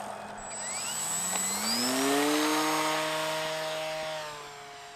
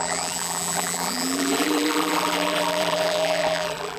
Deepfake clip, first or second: second